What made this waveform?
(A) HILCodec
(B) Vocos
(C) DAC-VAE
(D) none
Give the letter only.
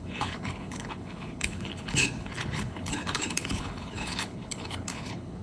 A